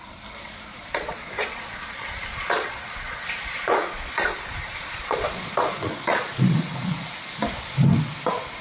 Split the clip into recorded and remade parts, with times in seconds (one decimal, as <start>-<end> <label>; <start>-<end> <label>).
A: 0.0-0.7 recorded; 0.7-1.8 remade; 1.8-2.3 recorded; 2.3-7.1 remade; 7.1-8.6 recorded